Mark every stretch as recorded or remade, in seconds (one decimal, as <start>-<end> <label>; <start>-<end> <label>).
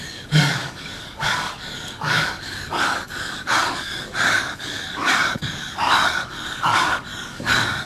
0.0-7.9 remade